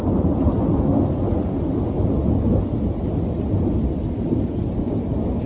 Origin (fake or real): real